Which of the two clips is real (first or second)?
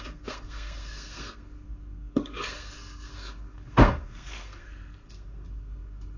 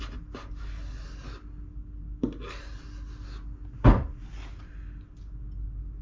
second